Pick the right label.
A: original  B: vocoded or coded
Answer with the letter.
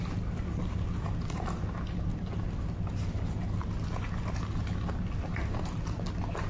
A